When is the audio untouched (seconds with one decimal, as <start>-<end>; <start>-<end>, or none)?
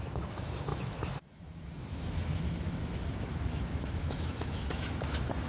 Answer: none